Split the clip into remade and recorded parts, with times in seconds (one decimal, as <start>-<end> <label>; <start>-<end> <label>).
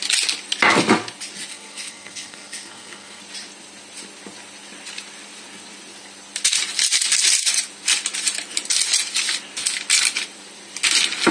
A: 0.0-1.5 recorded; 1.5-3.2 remade; 3.2-11.3 recorded